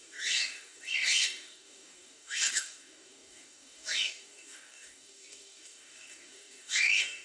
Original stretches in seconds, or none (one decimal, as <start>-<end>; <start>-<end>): none